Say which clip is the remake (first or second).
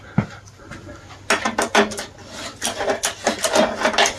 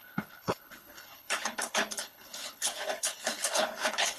second